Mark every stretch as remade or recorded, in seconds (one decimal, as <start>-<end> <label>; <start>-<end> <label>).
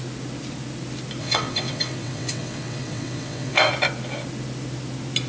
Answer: 0.0-1.2 recorded; 1.2-3.7 remade; 3.7-5.3 recorded